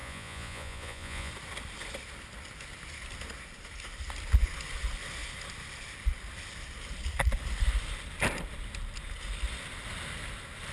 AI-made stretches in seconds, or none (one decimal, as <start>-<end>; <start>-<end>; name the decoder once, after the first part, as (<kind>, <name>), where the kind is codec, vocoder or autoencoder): 0.0-1.3 (vocoder, Vocos)